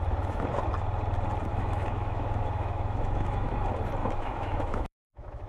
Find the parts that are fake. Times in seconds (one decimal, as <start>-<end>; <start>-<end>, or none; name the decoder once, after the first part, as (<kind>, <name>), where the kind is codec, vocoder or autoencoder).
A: 1.5-3.5 (autoencoder, DAC-VAE); 4.0-5.5